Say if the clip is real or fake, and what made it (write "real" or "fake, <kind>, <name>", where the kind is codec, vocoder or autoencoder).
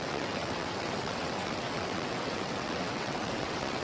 fake, vocoder, WaveNeXt